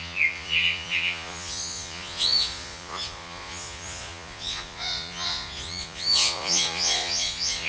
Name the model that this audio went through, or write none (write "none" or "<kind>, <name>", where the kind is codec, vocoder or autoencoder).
vocoder, Vocos